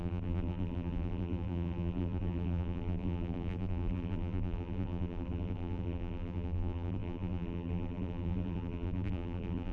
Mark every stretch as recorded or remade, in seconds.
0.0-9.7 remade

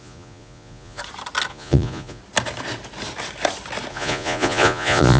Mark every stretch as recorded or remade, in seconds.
0.0-1.0 remade; 1.0-1.5 recorded; 1.5-2.2 remade; 2.2-3.9 recorded; 3.9-5.2 remade

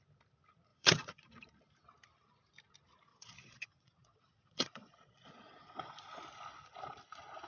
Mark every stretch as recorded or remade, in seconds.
0.0-0.7 recorded; 0.7-1.3 remade; 1.3-3.1 recorded; 3.1-6.2 remade; 6.2-7.5 recorded